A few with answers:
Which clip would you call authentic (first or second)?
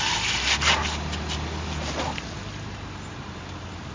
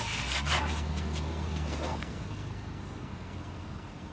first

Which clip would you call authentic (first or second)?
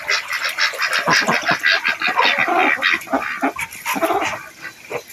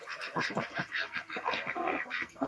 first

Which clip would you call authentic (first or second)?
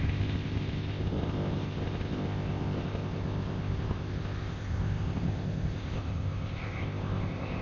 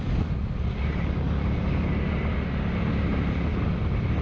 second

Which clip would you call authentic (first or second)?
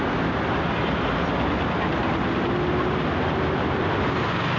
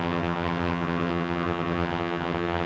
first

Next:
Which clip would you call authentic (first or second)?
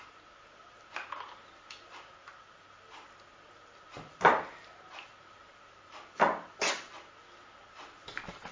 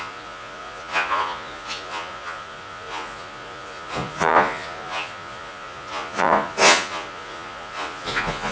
first